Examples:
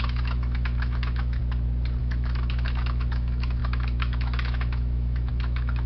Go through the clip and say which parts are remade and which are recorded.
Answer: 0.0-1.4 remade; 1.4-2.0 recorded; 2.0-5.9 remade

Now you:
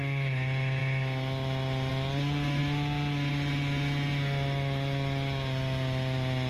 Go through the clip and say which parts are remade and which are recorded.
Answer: 0.0-6.5 recorded

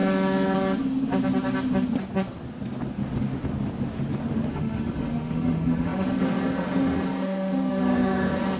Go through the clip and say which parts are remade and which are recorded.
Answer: 0.0-4.5 recorded; 4.5-8.6 remade

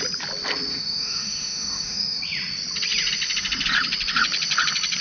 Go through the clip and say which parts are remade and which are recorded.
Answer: 0.0-0.7 recorded; 0.7-2.2 remade; 2.2-5.0 recorded

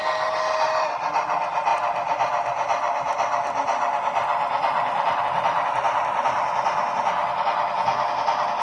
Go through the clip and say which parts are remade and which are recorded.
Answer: 0.0-8.6 recorded